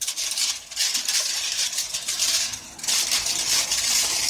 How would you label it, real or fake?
real